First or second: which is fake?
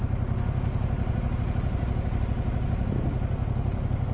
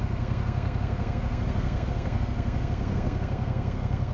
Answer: second